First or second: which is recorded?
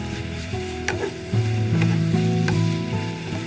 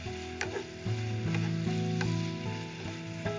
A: second